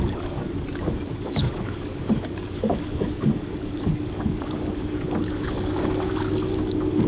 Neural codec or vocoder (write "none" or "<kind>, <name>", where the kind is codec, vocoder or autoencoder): codec, DAC